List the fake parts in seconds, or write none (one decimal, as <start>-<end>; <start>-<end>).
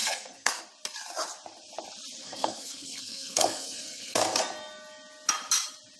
0.0-0.6; 2.2-4.4